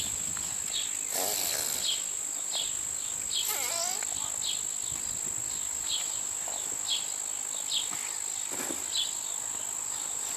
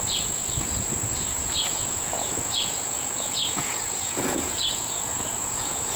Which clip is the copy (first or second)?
second